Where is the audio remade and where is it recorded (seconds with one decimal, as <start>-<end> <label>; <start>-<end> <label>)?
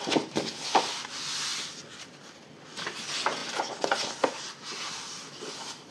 0.0-5.9 recorded